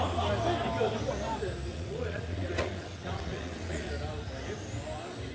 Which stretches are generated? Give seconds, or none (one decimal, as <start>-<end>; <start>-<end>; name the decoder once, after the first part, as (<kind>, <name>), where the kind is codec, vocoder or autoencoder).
1.7-3.9 (vocoder, WaveNeXt)